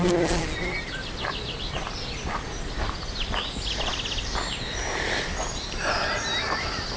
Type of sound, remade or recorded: recorded